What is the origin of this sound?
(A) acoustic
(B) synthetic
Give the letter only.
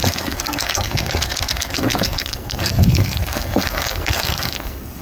B